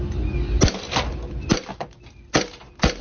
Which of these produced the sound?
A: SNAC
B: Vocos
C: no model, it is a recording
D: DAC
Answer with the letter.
C